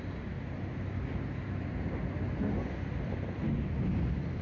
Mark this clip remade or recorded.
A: recorded